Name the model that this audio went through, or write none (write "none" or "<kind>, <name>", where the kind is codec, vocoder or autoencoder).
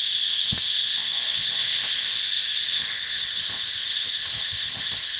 codec, ZipCodec